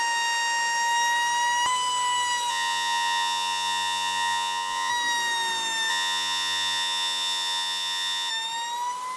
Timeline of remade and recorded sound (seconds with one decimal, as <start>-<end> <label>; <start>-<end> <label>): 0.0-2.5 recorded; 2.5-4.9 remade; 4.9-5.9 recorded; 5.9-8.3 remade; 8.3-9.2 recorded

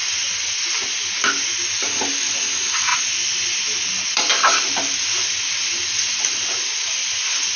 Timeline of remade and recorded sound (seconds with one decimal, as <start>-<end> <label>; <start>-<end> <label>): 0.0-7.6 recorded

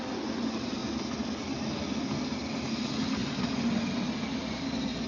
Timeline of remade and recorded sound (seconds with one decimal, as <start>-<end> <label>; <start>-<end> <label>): 0.0-5.1 recorded

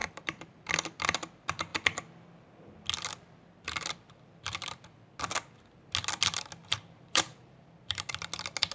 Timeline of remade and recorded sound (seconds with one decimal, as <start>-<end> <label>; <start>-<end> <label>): 0.0-0.7 remade; 0.7-6.6 recorded; 6.6-8.1 remade; 8.1-8.7 recorded

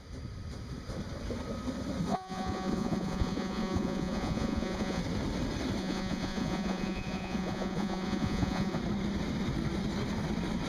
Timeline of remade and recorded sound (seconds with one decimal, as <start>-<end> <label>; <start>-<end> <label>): 0.0-2.1 recorded; 2.1-5.0 remade; 5.0-5.8 recorded; 5.8-8.8 remade; 8.8-10.7 recorded

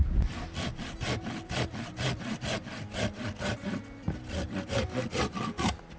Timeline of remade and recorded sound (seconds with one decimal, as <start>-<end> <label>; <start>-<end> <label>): 0.0-6.0 recorded

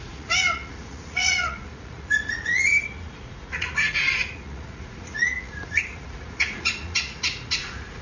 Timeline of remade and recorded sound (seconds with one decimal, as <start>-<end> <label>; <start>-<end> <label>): 0.0-8.0 remade